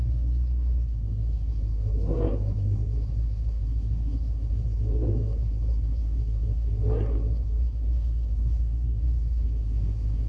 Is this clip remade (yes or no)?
yes